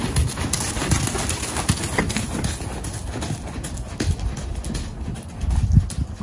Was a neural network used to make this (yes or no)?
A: no